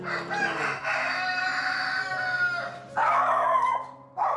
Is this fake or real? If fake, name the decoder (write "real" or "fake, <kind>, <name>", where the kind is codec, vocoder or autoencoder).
real